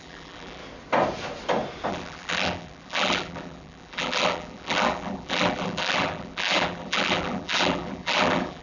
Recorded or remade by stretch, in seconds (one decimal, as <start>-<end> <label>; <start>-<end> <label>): 0.0-0.6 remade; 0.6-1.9 recorded; 1.9-8.6 remade